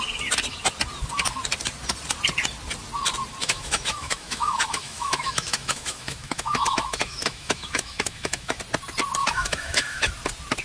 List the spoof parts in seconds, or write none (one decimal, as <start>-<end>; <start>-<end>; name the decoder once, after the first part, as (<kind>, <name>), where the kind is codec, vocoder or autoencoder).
3.4-8.6 (autoencoder, DAC-VAE); 9.2-10.1